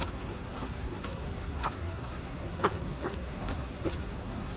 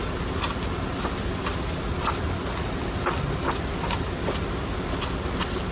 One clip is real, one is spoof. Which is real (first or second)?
second